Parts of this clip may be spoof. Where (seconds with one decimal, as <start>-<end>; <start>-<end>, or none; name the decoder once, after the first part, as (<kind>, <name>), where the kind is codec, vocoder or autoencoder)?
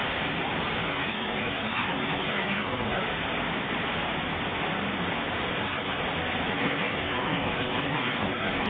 0.9-3.0 (codec, SNAC); 5.6-6.0; 6.5-8.7